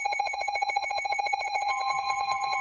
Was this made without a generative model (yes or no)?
no